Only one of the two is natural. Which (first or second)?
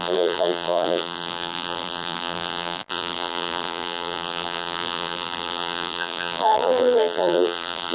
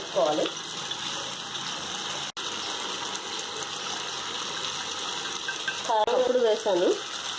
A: second